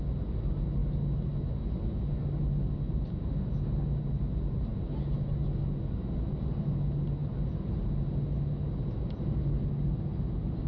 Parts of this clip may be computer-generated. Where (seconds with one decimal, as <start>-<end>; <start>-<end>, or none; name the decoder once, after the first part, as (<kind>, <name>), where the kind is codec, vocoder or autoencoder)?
none